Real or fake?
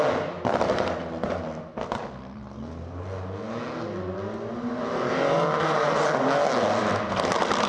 real